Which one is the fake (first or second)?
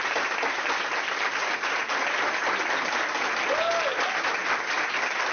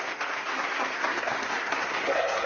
second